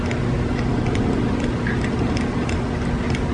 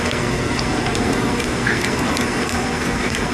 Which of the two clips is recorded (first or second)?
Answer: first